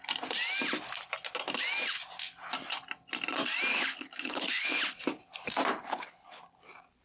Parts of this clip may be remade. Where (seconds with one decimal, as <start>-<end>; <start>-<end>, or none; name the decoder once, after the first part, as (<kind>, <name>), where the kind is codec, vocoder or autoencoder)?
3.7-4.8 (codec, HILCodec); 5.7-6.4